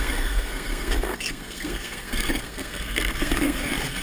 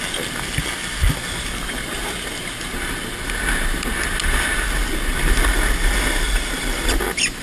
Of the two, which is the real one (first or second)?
second